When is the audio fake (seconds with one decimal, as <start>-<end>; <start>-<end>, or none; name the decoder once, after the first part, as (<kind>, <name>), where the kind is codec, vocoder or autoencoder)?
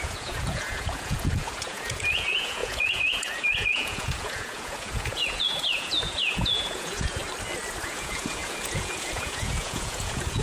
0.0-7.2 (vocoder, Vocos); 7.8-10.4